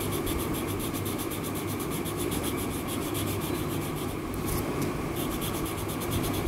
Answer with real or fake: real